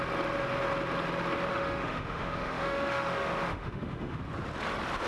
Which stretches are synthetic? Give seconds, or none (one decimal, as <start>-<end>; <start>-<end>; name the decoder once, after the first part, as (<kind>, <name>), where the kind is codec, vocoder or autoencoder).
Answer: 1.5-4.2 (autoencoder, DAC-VAE)